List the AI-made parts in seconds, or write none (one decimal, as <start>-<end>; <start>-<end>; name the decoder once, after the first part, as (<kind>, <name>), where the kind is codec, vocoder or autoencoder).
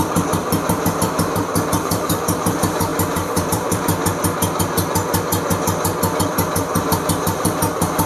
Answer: 0.0-3.9 (vocoder, BigVGAN v2); 6.3-8.1